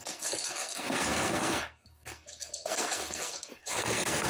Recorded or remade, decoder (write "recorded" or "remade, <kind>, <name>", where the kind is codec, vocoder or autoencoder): remade, codec, SNAC